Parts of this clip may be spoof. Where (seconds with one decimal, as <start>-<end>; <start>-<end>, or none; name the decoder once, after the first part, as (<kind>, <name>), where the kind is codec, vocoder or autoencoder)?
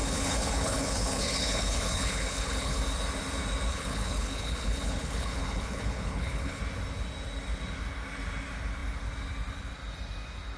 0.0-2.8 (codec, HILCodec); 3.7-6.6